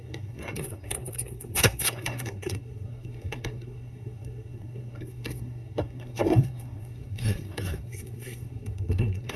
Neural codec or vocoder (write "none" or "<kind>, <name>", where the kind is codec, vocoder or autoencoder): codec, SNAC